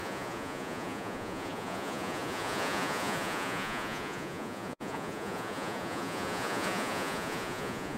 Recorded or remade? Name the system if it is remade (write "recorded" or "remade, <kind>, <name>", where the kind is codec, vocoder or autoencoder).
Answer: remade, vocoder, Vocos